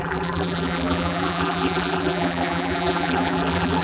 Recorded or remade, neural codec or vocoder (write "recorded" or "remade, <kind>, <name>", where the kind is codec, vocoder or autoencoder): remade, vocoder, BigVGAN v2